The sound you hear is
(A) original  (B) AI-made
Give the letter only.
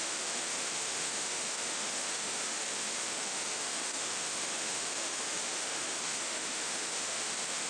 B